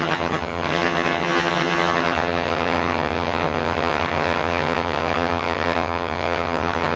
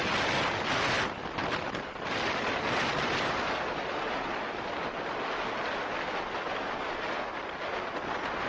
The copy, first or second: first